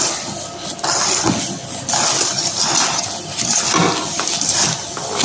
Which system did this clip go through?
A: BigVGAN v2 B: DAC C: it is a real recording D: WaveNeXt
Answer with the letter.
C